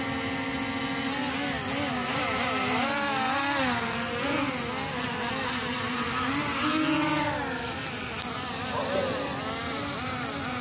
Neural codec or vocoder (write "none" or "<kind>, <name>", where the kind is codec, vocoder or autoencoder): none